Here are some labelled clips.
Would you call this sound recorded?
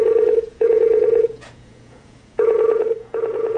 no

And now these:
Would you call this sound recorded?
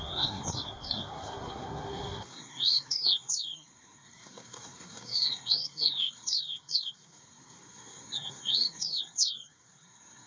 no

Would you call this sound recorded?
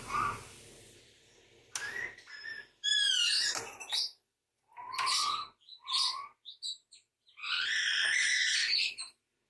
yes